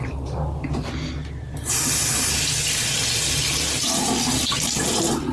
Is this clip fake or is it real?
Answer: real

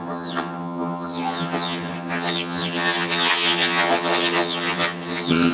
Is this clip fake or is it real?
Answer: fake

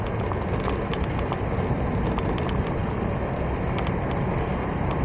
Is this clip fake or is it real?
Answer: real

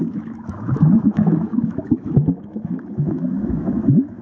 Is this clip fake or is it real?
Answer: fake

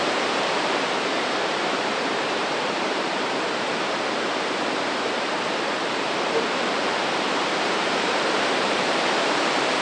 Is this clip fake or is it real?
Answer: fake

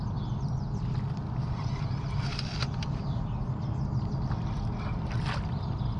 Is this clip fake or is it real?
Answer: real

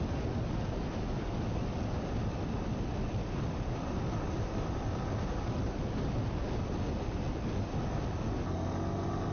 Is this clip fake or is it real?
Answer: real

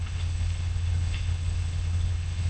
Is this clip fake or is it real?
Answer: fake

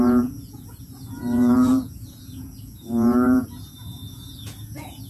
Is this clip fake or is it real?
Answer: fake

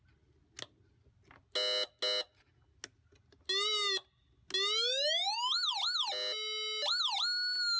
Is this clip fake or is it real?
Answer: real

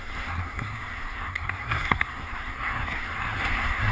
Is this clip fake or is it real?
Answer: fake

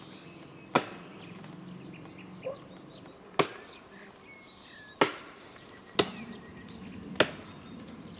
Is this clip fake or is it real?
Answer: real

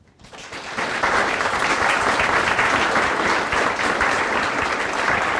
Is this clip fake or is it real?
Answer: real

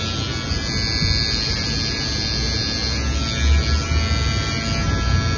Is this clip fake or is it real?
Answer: real